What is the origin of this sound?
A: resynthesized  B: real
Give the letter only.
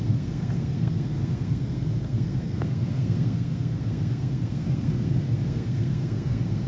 A